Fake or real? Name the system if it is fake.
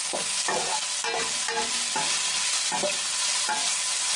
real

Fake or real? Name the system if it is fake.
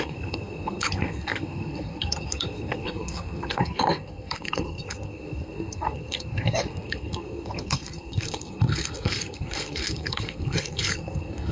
fake, codec, SNAC